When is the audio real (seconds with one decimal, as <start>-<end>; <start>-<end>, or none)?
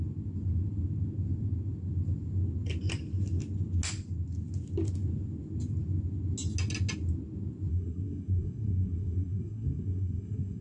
0.0-7.7